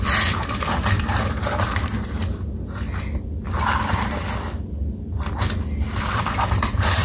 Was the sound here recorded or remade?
recorded